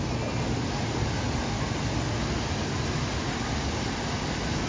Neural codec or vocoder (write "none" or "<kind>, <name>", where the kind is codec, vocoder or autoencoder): none